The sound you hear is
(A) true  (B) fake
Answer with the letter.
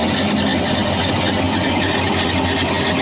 A